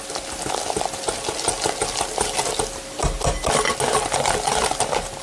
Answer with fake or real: real